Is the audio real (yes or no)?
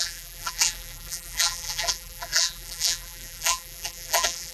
no